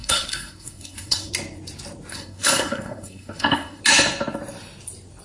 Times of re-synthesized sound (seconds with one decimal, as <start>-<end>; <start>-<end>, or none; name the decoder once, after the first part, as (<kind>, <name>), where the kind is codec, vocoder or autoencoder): 0.0-1.3 (codec, SNAC); 2.1-3.8